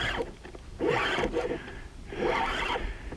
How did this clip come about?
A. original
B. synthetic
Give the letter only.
A